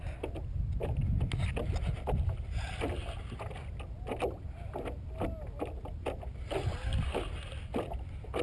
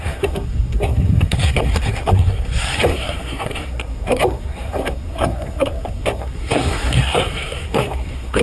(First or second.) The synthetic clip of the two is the second